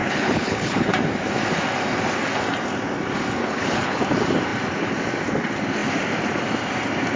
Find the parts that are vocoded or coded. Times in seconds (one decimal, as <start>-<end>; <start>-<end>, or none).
0.0-0.9; 3.4-4.0